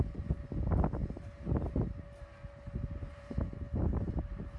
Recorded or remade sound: recorded